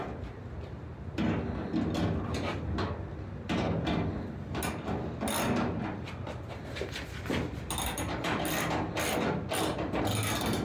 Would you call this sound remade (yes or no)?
no